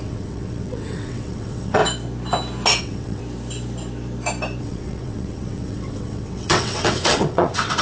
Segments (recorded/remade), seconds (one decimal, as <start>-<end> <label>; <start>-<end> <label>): 0.0-1.8 remade; 1.8-2.8 recorded; 2.8-3.2 remade; 3.2-4.6 recorded; 4.6-7.8 remade